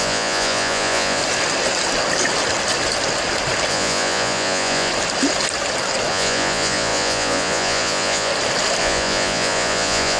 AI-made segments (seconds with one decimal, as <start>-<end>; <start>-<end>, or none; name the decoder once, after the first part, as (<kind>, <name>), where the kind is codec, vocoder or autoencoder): 0.0-1.2 (vocoder, Vocos); 3.7-4.9; 6.1-8.3; 8.8-10.2